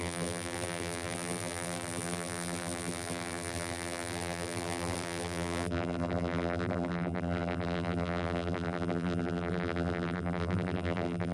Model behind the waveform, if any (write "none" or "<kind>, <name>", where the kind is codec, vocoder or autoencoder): vocoder, BigVGAN v2